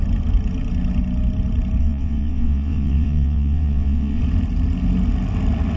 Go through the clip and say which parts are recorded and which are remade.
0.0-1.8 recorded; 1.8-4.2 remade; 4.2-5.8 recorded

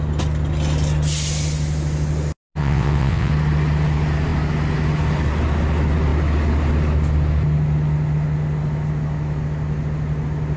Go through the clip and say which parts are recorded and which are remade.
0.0-2.6 recorded; 2.6-3.3 remade; 3.3-10.6 recorded

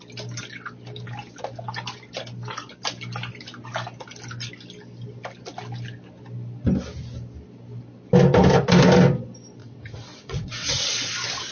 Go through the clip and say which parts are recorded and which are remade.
0.0-9.6 recorded; 9.6-11.1 remade; 11.1-11.5 recorded